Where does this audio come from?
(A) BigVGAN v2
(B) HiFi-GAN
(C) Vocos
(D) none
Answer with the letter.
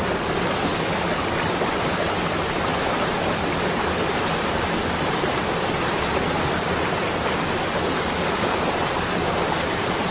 D